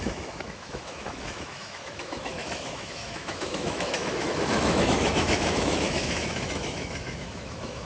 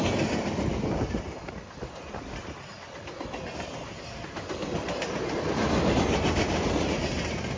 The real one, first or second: second